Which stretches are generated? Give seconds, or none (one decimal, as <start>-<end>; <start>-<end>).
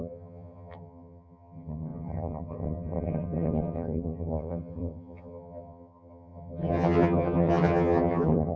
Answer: 0.0-8.6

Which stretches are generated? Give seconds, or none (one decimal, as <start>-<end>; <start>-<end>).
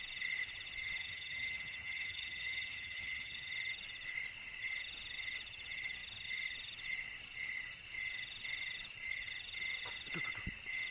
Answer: 1.0-3.5